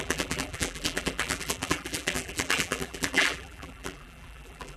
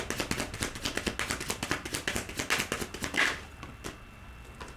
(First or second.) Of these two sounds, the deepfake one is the first